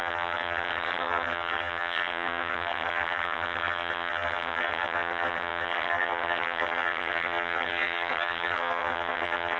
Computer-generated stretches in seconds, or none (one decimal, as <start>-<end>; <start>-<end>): 0.0-9.6